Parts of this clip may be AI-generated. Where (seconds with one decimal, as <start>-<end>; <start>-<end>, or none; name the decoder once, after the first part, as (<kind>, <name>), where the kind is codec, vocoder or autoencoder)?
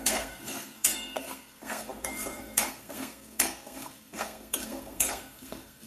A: 0.0-5.9 (codec, SNAC)